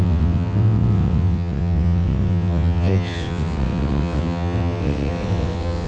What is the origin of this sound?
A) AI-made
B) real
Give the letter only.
A